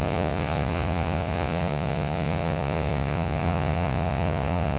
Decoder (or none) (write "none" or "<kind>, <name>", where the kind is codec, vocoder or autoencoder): vocoder, Vocos